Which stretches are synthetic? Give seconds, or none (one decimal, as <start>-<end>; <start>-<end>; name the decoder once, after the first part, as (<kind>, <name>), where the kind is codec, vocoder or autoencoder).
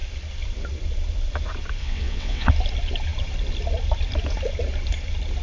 1.8-2.5 (vocoder, WaveNeXt)